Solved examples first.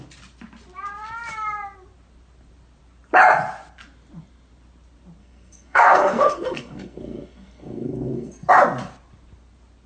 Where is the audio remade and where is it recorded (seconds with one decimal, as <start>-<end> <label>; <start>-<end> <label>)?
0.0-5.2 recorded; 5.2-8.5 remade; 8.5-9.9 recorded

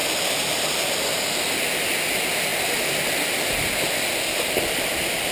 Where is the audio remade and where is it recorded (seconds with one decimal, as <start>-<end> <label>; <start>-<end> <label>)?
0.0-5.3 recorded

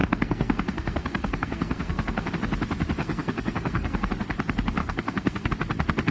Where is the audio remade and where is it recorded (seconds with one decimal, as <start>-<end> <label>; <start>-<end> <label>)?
0.0-2.3 remade; 2.3-3.0 recorded; 3.0-4.1 remade; 4.1-4.8 recorded; 4.8-5.5 remade; 5.5-6.1 recorded

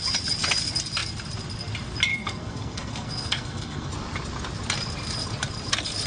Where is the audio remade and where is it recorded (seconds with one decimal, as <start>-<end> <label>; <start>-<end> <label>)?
0.0-2.1 recorded; 2.1-3.9 remade; 3.9-6.1 recorded

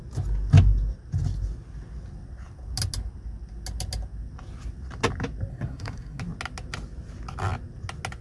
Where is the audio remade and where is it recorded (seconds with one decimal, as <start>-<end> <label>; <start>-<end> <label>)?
0.0-5.5 recorded; 5.5-6.2 remade; 6.2-8.2 recorded